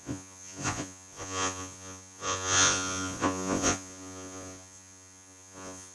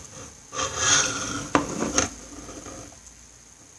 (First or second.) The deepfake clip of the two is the first